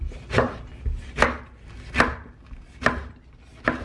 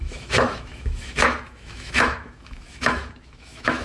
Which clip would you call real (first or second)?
first